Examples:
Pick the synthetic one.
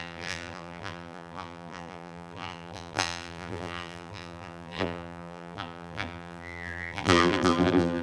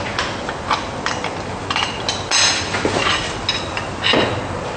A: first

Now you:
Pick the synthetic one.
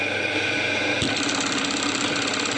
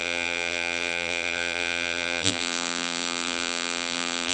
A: second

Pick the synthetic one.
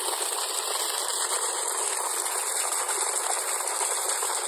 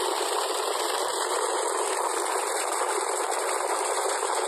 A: second